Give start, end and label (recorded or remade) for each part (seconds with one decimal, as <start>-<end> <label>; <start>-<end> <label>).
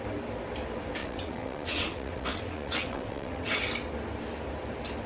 0.0-1.0 recorded; 1.0-3.6 remade; 3.6-5.1 recorded